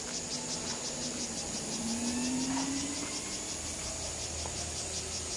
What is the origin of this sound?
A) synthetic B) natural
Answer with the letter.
B